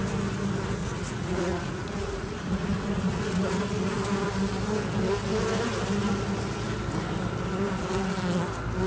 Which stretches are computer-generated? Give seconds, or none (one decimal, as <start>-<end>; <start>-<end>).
0.8-4.0